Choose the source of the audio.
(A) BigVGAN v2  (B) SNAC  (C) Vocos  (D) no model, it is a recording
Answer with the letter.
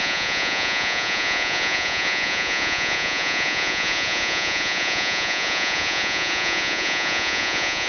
C